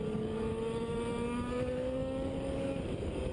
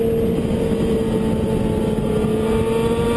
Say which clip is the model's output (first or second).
first